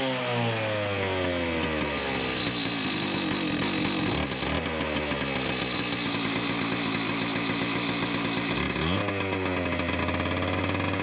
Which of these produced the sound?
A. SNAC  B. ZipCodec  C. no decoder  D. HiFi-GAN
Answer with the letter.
C